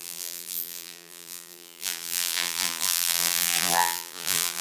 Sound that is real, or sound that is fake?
fake